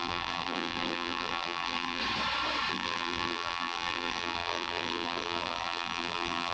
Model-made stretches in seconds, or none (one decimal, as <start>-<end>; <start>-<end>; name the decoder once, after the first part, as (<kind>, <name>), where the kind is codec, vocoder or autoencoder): 0.0-2.0 (vocoder, BigVGAN v2); 2.7-6.5